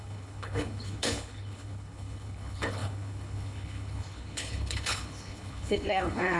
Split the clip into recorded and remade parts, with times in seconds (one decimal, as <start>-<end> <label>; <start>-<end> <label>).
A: 0.0-6.4 remade